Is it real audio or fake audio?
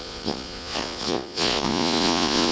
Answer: fake